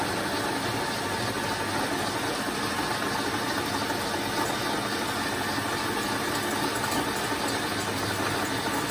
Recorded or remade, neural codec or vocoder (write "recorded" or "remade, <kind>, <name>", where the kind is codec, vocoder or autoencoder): recorded